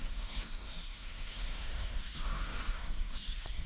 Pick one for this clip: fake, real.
fake